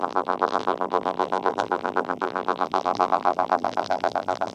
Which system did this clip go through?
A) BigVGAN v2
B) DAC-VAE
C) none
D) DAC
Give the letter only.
A